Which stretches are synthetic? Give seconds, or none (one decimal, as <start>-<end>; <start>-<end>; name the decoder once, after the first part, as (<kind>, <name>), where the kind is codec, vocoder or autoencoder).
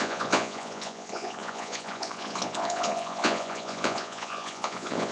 0.0-5.1 (vocoder, Vocos)